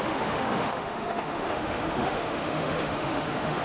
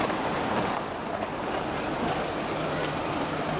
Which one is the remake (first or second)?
first